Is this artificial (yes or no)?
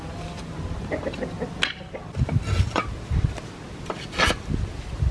no